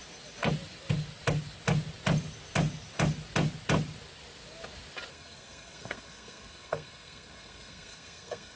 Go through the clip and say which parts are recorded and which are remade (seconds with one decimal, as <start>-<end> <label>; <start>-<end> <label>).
0.0-5.1 recorded; 5.1-8.6 remade

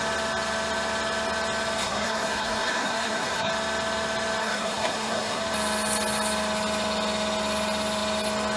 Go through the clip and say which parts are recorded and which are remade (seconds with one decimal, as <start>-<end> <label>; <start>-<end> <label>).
0.0-1.8 recorded; 1.8-3.5 remade; 3.5-4.4 recorded; 4.4-5.4 remade; 5.4-8.6 recorded

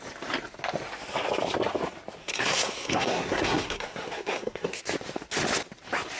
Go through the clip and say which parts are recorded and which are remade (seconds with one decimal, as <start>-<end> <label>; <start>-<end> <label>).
0.0-2.2 recorded; 2.2-4.8 remade; 4.8-6.2 recorded

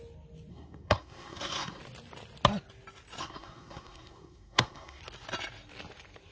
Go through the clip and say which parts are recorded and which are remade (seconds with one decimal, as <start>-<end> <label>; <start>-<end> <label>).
0.0-0.5 recorded; 0.5-1.8 remade; 1.8-3.2 recorded; 3.2-5.0 remade; 5.0-6.3 recorded

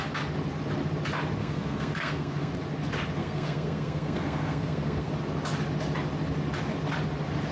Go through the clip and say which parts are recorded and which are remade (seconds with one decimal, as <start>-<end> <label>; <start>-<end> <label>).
0.0-1.4 recorded; 1.4-2.5 remade; 2.5-3.2 recorded; 3.2-5.1 remade; 5.1-7.5 recorded

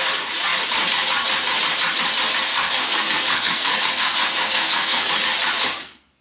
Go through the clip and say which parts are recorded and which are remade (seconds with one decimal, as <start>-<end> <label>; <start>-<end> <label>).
0.0-2.5 recorded; 2.5-5.1 remade; 5.1-5.7 recorded; 5.7-6.2 remade